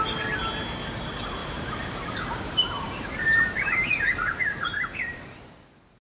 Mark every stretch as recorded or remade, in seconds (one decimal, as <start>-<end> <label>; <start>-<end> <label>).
0.0-1.4 recorded; 1.4-4.4 remade; 4.4-4.9 recorded; 4.9-5.6 remade; 5.6-6.1 recorded